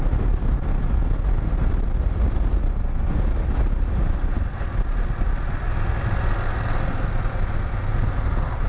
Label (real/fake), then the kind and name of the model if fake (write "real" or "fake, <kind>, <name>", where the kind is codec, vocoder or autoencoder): real